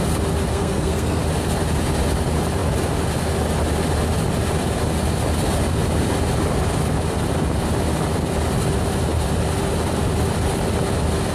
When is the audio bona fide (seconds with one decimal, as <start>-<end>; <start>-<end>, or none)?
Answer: 0.0-0.5; 1.2-11.3